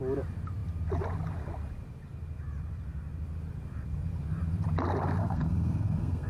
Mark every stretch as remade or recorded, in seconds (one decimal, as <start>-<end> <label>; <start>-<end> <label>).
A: 0.0-5.2 recorded; 5.2-6.3 remade